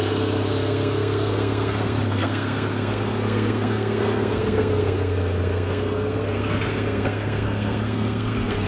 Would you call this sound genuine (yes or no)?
no